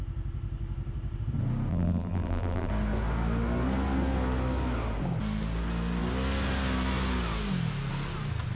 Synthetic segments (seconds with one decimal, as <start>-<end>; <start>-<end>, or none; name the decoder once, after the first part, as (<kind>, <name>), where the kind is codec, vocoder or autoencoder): 1.7-2.7 (vocoder, BigVGAN v2)